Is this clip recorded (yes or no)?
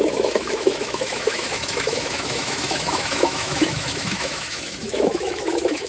no